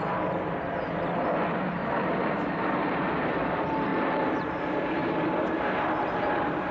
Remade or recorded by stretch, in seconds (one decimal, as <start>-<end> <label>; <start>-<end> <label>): 0.0-1.8 recorded; 1.8-3.1 remade; 3.1-3.9 recorded; 3.9-5.3 remade; 5.3-6.7 recorded